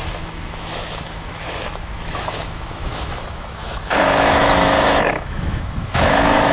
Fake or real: fake